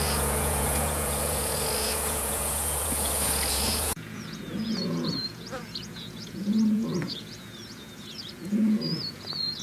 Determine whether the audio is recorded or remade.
remade